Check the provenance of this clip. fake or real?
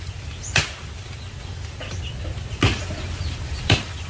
real